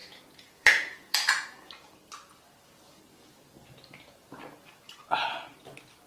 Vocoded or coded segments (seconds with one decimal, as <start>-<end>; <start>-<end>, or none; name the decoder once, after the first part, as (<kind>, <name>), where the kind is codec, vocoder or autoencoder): 0.0-1.7 (vocoder, Vocos)

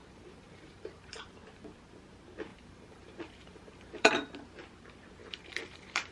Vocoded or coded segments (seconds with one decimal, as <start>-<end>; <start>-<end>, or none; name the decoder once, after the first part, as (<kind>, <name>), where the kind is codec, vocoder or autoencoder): 0.0-1.1 (vocoder, BigVGAN v2); 2.5-4.1; 5.2-6.1

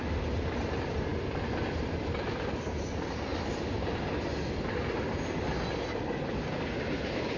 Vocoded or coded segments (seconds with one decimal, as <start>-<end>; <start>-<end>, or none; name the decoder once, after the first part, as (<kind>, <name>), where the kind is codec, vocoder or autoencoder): 1.1-2.5 (vocoder, BigVGAN v2); 3.3-4.1

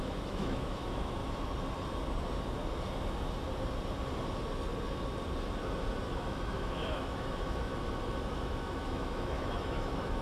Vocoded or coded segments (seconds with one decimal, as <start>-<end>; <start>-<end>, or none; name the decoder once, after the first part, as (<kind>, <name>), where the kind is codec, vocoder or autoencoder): 0.0-1.2 (autoencoder, DAC-VAE); 6.2-7.7; 8.3-10.2

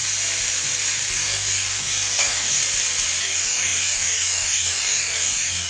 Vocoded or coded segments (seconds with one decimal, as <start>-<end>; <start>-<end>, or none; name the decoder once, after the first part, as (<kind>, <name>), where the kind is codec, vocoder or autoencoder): 1.1-2.6 (codec, DAC); 3.2-5.7

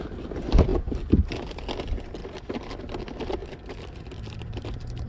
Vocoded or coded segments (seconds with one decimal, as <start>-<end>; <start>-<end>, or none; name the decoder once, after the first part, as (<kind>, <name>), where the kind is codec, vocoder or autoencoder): 2.2-2.8 (vocoder, BigVGAN v2); 3.4-5.1